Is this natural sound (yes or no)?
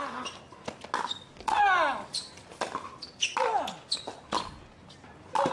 yes